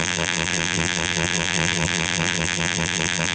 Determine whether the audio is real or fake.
fake